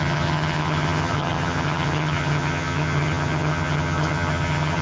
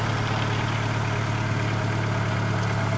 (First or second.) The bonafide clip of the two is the second